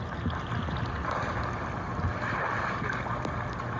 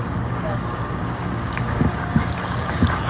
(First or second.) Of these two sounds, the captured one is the first